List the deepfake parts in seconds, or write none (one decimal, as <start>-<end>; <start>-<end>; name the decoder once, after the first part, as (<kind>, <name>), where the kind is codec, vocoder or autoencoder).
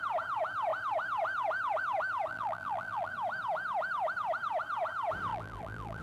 2.3-3.1 (vocoder, BigVGAN v2); 5.3-6.0